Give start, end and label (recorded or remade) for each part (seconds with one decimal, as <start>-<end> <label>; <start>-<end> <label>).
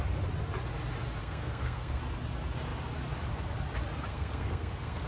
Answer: 0.0-1.2 recorded; 1.2-2.0 remade; 2.0-4.1 recorded; 4.1-5.1 remade